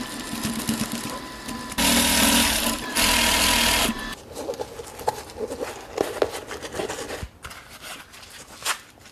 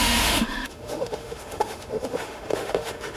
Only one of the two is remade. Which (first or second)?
second